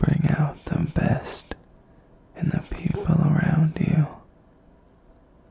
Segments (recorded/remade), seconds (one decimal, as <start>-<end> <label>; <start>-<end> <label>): 0.0-5.5 recorded